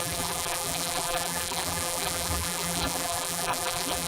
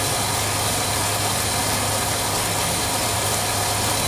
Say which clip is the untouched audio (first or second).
second